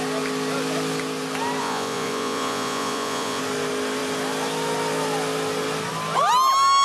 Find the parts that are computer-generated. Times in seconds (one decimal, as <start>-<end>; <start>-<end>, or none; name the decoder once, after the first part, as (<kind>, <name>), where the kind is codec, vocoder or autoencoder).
1.6-3.4 (vocoder, Vocos)

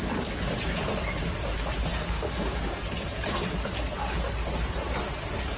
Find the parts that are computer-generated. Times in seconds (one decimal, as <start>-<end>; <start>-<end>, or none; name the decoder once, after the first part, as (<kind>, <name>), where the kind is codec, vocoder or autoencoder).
1.9-2.8 (codec, DAC)

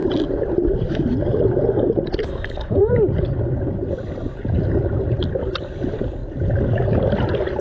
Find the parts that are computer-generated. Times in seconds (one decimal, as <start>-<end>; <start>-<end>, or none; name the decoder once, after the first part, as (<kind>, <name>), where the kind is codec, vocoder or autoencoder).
2.3-2.9 (codec, DAC)

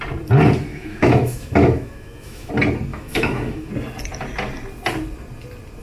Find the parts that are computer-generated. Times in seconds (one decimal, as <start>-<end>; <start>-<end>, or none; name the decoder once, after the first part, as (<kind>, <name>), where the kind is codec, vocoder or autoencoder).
0.7-2.5 (autoencoder, DAC-VAE); 2.9-3.7

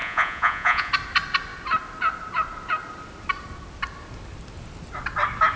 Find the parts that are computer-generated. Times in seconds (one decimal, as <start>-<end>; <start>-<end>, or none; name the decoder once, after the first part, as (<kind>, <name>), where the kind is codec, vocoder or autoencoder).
0.0-0.9 (vocoder, Vocos)